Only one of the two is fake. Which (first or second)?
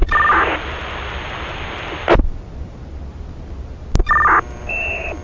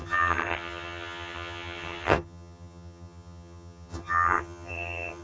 second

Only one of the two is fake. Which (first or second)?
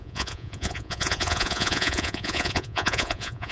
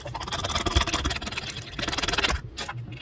first